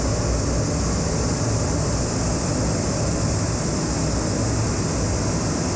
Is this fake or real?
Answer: real